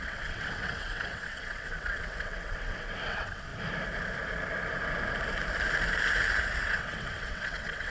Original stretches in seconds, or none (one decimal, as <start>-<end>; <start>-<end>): 3.5-6.7